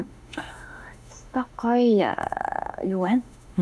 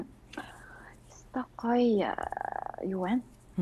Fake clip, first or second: first